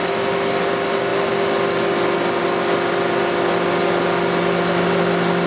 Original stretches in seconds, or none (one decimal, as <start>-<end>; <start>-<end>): 0.0-5.5